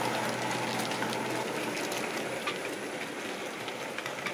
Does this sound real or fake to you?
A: real